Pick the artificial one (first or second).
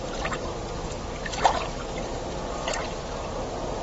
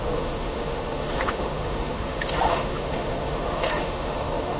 second